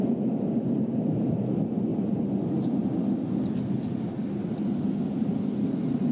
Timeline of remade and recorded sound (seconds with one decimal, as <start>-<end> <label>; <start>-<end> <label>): 0.0-1.9 remade; 1.9-5.0 recorded; 5.0-6.1 remade